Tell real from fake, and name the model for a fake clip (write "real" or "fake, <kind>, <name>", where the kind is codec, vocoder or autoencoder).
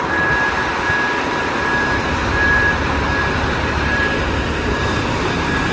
real